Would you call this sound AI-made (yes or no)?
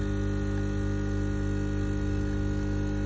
no